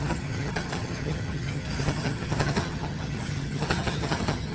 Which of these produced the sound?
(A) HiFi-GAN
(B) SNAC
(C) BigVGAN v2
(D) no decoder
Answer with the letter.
A